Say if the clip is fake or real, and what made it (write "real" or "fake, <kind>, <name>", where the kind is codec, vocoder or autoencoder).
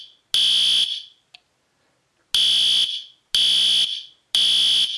real